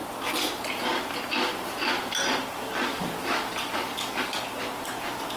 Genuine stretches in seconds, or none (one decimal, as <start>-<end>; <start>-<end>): 0.0-2.9; 4.4-5.4